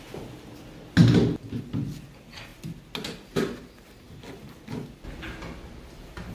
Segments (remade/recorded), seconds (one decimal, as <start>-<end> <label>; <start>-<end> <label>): 0.0-6.3 recorded